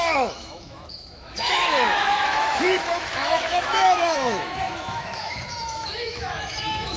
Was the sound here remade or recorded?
remade